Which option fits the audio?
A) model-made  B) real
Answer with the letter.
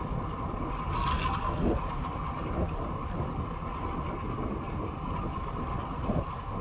B